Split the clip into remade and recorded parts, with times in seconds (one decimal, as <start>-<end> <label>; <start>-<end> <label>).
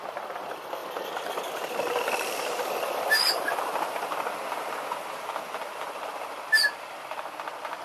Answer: 0.0-7.8 recorded